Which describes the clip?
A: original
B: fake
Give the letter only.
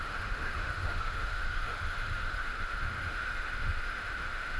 B